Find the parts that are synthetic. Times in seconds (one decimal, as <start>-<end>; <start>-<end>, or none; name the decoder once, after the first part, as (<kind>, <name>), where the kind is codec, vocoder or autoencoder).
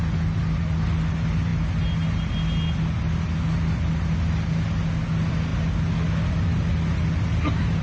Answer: none